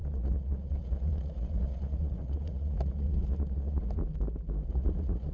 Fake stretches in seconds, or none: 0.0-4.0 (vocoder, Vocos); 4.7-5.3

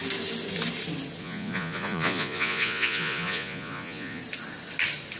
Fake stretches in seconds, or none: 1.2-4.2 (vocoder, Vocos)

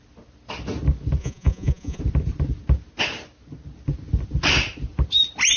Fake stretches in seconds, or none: 1.2-2.0 (vocoder, Vocos)

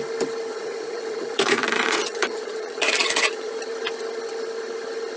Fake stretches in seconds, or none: 0.5-3.6 (vocoder, Vocos)

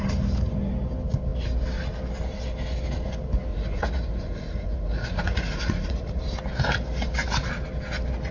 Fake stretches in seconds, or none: 3.5-6.2 (vocoder, Vocos)

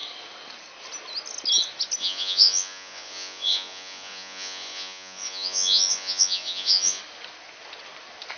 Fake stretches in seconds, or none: 2.0-7.0 (vocoder, Vocos)

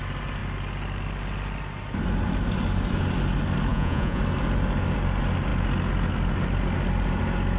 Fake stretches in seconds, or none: 3.7-4.2 (vocoder, Vocos)

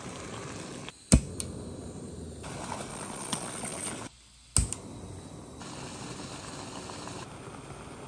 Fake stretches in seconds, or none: 2.9-3.9 (vocoder, Vocos)